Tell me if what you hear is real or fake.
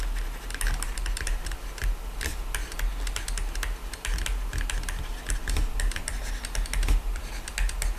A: real